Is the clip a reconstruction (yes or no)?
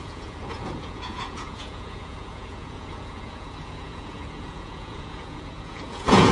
yes